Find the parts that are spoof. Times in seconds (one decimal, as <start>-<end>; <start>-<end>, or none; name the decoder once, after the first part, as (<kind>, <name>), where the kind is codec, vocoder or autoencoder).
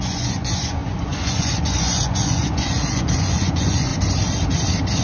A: 0.0-3.9 (vocoder, Vocos)